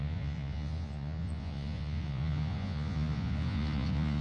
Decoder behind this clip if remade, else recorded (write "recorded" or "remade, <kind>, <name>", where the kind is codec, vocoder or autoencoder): remade, vocoder, Vocos